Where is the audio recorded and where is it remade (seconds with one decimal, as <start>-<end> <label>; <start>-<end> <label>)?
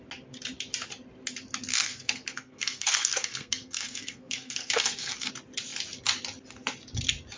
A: 0.0-1.7 recorded; 1.7-5.3 remade; 5.3-7.4 recorded